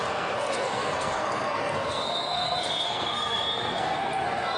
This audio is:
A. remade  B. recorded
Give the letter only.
A